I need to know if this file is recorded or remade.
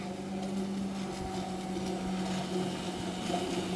recorded